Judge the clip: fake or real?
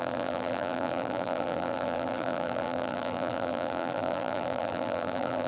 fake